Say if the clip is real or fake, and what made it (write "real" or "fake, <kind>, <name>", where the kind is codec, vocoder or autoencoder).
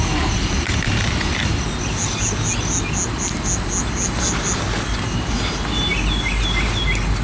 real